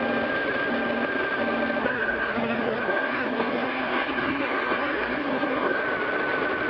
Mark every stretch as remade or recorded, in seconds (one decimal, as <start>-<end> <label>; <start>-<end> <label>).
0.0-1.8 recorded; 1.8-5.8 remade; 5.8-6.7 recorded